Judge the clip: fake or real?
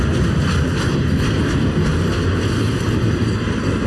real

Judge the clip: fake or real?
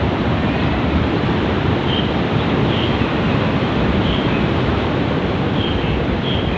fake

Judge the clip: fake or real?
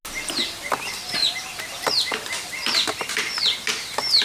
real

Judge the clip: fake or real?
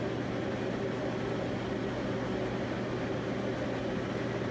real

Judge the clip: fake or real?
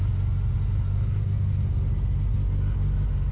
real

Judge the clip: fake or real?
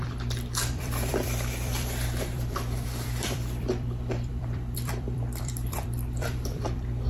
fake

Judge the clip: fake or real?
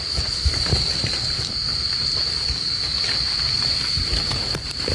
fake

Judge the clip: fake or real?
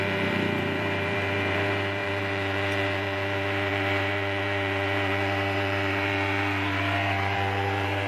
fake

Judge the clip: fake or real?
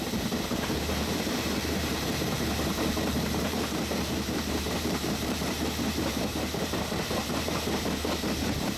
fake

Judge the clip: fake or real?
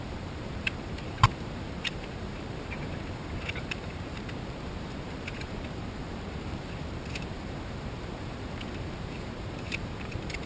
fake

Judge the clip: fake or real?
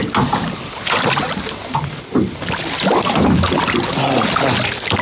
real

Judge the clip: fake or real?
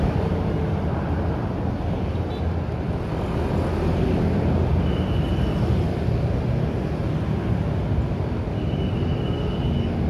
real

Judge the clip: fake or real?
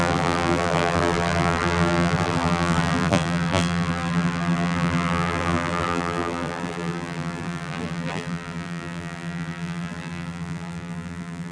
fake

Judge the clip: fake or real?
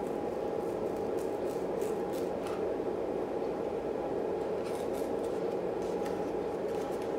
real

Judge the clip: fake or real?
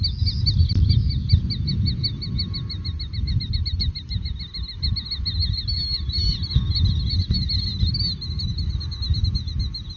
real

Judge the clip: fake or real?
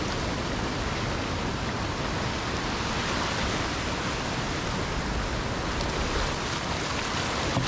real